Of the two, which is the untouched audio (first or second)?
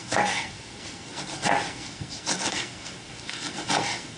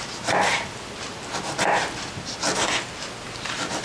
second